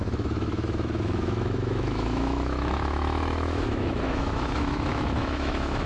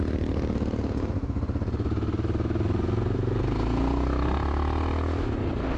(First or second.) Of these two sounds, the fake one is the first